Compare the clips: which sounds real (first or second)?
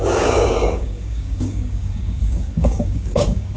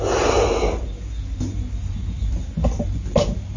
second